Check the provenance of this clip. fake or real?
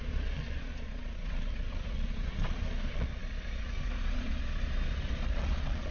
fake